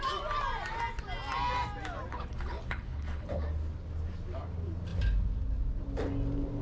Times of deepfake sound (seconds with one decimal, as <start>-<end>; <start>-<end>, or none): 2.1-3.4